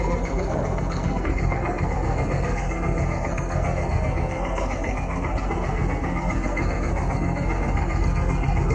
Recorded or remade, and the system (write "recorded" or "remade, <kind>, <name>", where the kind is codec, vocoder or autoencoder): remade, codec, SNAC